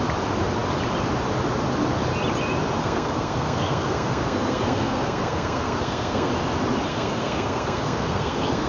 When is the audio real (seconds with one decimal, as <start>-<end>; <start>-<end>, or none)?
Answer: 0.0-2.8; 6.3-6.9

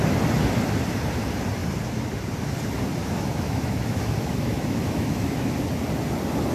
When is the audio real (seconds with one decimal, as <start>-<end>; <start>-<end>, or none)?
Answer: 0.0-3.0; 5.5-6.5

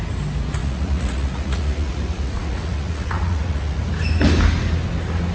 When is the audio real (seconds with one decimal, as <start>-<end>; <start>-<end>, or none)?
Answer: 0.0-0.6; 3.8-5.3